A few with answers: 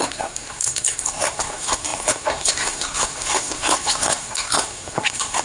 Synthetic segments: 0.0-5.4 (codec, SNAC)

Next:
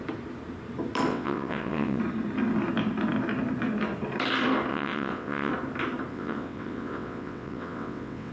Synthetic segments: 1.1-2.0 (vocoder, WaveNeXt); 4.7-5.5; 6.1-8.3

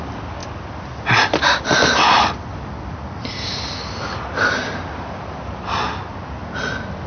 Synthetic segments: none

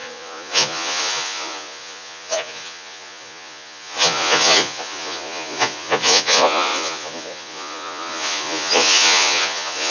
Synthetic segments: 0.0-9.9 (vocoder, Vocos)

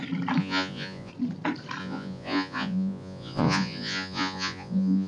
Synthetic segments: 0.4-1.1 (vocoder, Vocos); 1.8-5.1